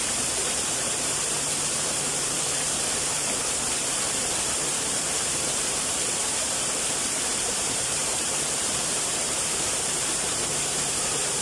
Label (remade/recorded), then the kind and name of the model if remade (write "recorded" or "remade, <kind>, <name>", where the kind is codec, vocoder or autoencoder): remade, vocoder, BigVGAN v2